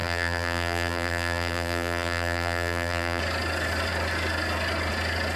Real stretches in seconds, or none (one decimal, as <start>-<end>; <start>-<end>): 3.2-5.4